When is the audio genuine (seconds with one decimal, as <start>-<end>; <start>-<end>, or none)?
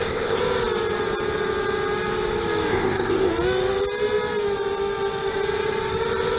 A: 0.4-2.7; 3.3-6.4